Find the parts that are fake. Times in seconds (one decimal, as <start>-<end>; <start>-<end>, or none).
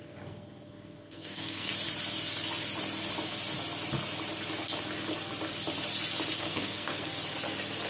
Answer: 0.0-1.7; 6.4-7.1